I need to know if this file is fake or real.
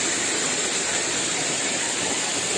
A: fake